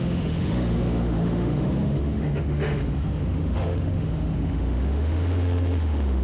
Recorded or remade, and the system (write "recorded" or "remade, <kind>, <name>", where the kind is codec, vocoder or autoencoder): remade, autoencoder, DAC-VAE